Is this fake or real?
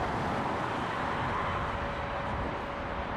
real